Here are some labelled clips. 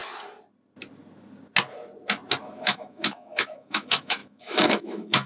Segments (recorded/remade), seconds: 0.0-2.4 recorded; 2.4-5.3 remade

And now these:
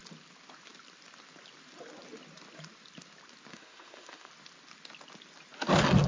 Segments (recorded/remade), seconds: 0.0-3.5 recorded; 3.5-4.3 remade; 4.3-6.1 recorded

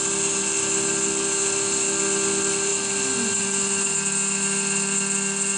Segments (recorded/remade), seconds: 0.0-5.6 recorded

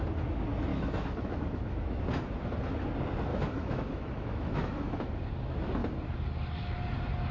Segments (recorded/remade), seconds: 0.0-0.7 recorded; 0.7-2.0 remade; 2.0-3.3 recorded; 3.3-5.1 remade; 5.1-7.3 recorded

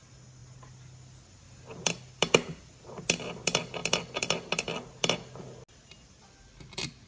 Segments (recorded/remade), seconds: 0.0-7.1 recorded